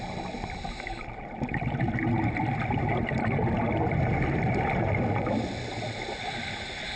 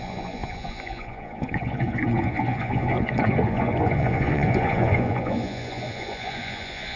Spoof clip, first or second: second